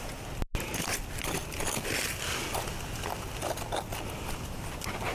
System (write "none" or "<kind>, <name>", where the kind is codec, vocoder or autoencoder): none